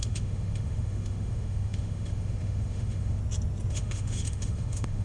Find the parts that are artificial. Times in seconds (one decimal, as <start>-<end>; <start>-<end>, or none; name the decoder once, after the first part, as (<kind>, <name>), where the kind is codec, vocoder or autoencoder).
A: 0.0-3.2 (autoencoder, DAC-VAE); 3.7-5.0